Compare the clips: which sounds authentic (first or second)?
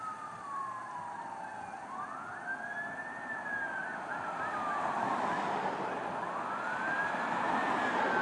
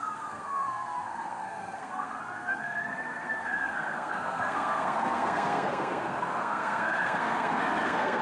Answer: first